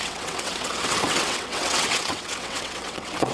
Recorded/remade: remade